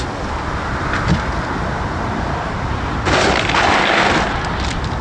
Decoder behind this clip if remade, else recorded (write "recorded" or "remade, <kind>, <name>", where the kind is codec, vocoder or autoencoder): recorded